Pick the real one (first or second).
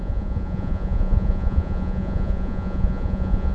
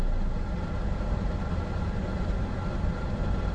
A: second